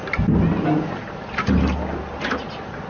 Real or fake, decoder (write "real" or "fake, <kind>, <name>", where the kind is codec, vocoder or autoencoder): real